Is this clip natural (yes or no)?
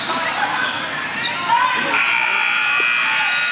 yes